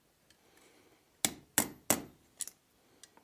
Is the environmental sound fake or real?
real